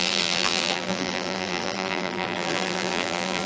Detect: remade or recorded remade